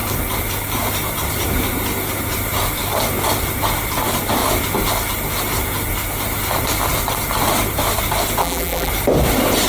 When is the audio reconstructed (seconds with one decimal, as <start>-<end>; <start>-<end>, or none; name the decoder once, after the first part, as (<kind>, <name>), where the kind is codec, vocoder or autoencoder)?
8.4-8.9 (vocoder, BigVGAN v2)